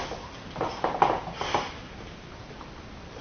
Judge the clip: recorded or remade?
recorded